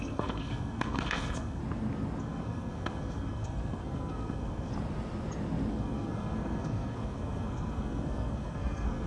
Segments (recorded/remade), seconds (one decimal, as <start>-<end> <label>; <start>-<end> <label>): 0.0-1.6 remade; 1.6-2.2 recorded; 2.2-4.7 remade; 4.7-5.7 recorded; 5.7-9.1 remade